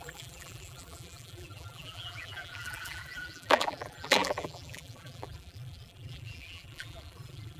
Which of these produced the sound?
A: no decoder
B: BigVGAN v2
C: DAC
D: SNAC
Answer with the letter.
B